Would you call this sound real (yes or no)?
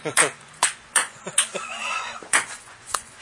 no